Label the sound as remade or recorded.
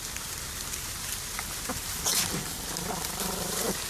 recorded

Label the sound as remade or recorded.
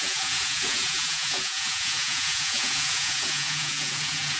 remade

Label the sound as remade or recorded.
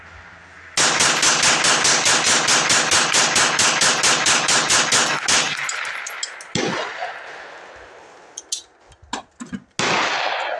recorded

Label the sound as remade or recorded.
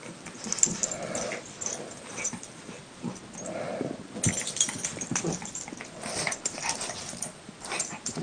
recorded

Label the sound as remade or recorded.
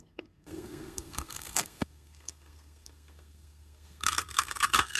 remade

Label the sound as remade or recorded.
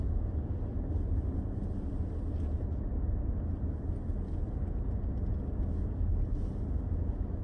recorded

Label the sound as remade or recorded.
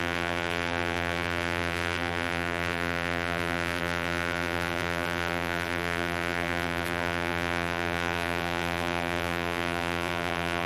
remade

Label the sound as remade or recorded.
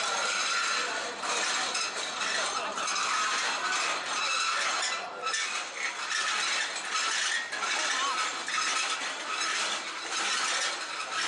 recorded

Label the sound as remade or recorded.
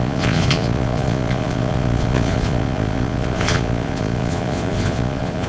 remade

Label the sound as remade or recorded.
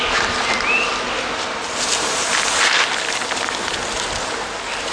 recorded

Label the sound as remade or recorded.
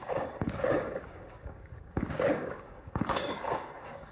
remade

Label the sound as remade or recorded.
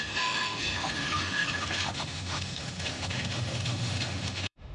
remade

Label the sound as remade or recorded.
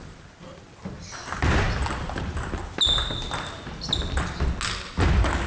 recorded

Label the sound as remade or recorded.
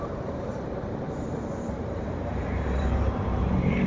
remade